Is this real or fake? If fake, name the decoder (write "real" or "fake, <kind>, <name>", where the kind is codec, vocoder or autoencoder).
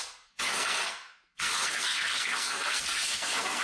fake, codec, SNAC